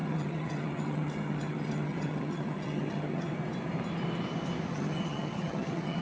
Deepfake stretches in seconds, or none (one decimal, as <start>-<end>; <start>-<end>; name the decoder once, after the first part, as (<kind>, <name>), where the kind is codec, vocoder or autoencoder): 0.0-3.3 (vocoder, HiFi-GAN); 4.7-6.0